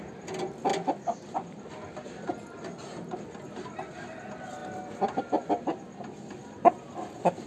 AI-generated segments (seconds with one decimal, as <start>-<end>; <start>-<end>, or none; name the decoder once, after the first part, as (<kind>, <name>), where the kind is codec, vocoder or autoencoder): none